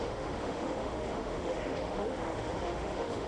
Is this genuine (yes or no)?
no